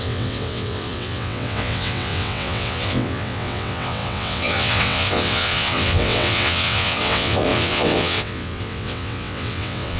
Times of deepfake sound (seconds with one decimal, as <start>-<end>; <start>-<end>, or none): 0.0-10.0